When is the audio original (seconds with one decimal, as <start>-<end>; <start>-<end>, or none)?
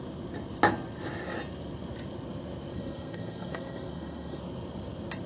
0.0-2.7; 4.4-5.3